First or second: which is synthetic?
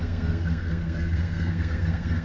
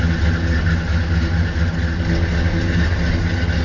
first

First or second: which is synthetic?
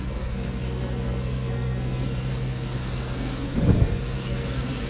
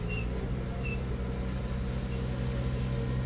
first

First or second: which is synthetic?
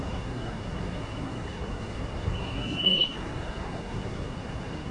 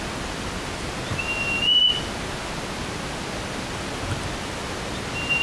first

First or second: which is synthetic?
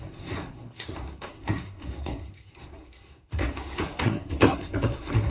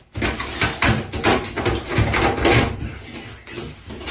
first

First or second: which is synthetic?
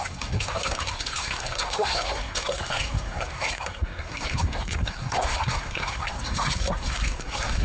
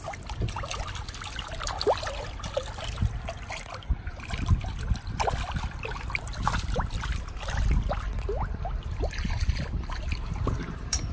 first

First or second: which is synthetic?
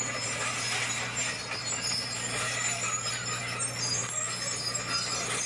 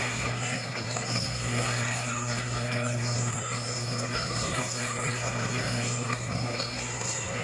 second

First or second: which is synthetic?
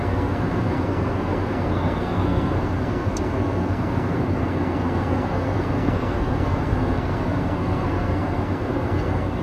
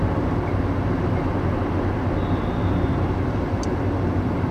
first